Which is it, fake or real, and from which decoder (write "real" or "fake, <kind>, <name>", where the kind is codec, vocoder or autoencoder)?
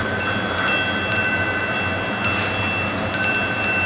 real